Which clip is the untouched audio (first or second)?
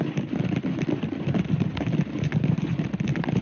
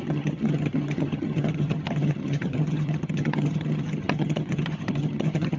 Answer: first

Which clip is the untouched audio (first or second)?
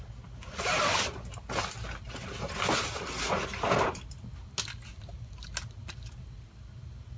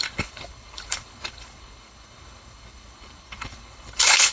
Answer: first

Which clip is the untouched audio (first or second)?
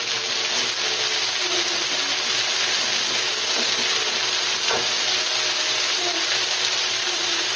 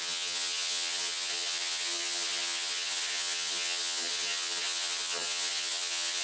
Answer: first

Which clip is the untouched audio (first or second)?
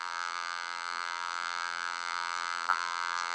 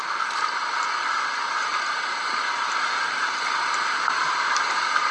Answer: second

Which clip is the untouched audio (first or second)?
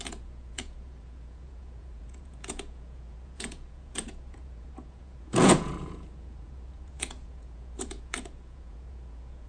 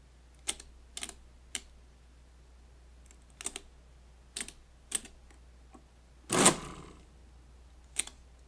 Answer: second